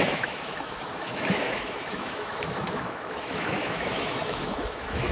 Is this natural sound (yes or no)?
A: no